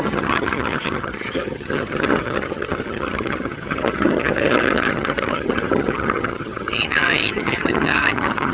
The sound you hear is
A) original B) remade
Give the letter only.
B